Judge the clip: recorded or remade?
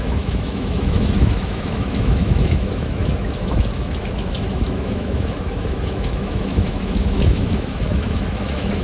remade